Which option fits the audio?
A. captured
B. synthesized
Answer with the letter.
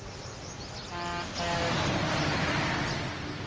A